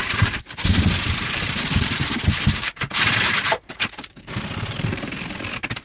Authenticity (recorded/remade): remade